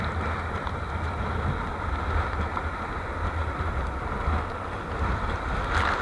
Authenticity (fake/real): real